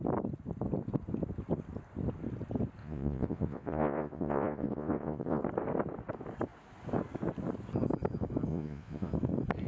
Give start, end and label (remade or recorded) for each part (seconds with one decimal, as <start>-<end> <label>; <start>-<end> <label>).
0.0-2.8 recorded; 2.8-5.4 remade; 5.4-8.5 recorded; 8.5-9.1 remade; 9.1-9.7 recorded